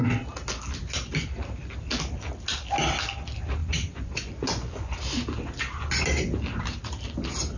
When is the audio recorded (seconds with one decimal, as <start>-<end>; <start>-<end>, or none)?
0.0-3.6; 5.0-7.6